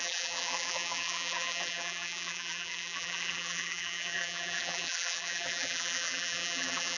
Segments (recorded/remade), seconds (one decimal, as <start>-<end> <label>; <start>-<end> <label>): 0.0-7.0 remade